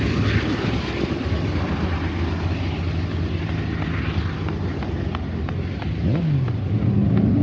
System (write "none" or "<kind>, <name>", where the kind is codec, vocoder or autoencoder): none